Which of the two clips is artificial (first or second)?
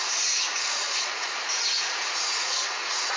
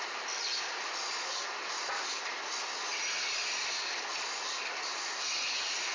first